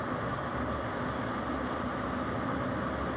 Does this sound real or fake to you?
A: real